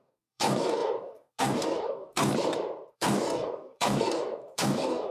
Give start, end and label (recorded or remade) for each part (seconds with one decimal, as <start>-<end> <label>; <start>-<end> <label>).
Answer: 0.0-2.3 remade; 2.3-2.9 recorded; 2.9-5.1 remade